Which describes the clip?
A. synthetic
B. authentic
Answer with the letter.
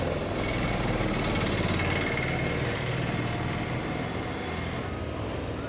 B